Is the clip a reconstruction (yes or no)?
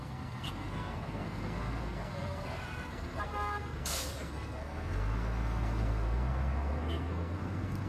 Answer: yes